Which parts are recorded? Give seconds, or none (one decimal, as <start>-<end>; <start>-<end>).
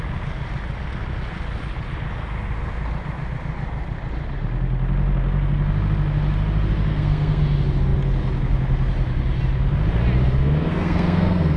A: 0.0-6.9; 7.4-10.7